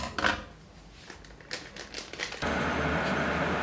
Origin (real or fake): real